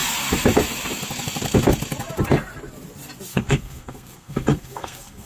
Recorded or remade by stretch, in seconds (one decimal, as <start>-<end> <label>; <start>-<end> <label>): 0.0-3.3 recorded; 3.3-5.3 remade

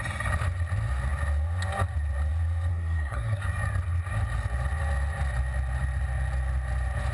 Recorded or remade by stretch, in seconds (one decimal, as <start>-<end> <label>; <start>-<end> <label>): 0.0-2.7 recorded; 2.7-3.4 remade; 3.4-7.1 recorded

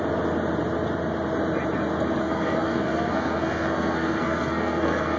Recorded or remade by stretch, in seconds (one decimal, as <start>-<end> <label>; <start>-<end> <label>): 0.0-2.2 recorded; 2.2-5.2 remade

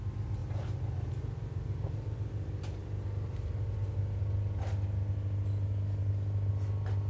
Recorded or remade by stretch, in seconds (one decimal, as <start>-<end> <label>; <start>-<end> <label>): 0.0-7.1 recorded